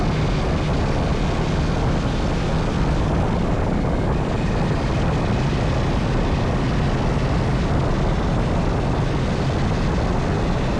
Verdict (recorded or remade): recorded